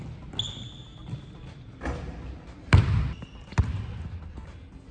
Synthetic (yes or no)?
no